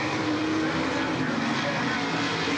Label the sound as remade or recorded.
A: recorded